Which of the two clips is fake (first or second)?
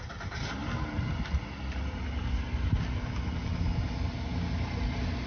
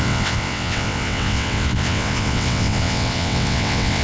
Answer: second